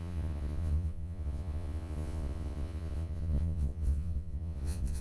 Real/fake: fake